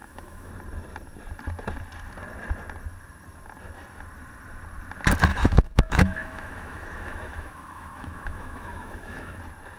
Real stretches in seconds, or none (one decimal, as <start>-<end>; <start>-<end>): 0.5-5.3; 9.4-9.8